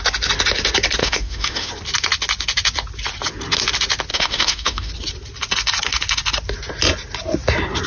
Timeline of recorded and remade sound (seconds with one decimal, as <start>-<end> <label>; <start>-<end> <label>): 0.0-1.0 recorded; 1.0-1.7 remade; 1.7-4.1 recorded; 4.1-4.9 remade; 4.9-7.9 recorded